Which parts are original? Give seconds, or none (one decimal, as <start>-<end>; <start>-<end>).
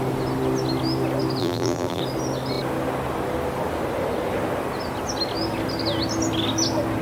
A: 0.0-1.4; 2.0-7.0